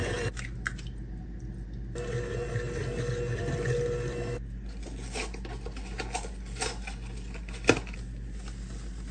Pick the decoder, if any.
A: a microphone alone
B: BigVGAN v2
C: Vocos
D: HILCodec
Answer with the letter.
A